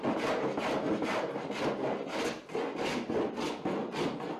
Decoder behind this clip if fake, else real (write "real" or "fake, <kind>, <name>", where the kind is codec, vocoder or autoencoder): real